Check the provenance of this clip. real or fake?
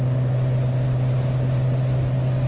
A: real